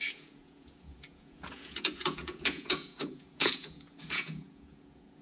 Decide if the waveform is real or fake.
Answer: fake